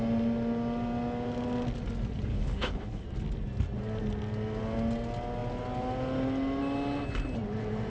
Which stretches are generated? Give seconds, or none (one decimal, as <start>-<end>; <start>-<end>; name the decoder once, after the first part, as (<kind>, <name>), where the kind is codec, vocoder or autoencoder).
2.3-3.0 (codec, HILCodec)